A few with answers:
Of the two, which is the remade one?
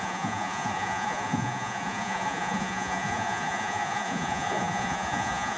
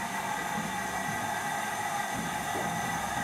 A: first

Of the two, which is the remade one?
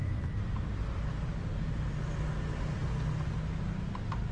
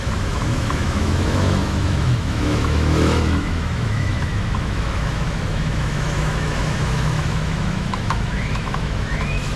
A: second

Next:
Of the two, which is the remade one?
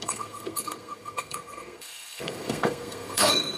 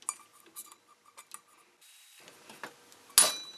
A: first